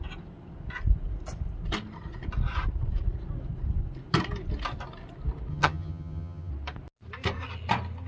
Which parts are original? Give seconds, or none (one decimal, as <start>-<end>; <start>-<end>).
0.0-5.5; 6.5-8.1